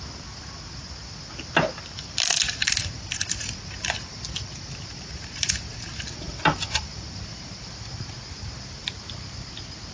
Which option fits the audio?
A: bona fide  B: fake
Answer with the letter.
A